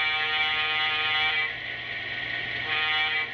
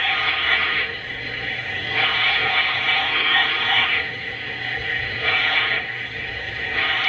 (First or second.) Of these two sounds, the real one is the first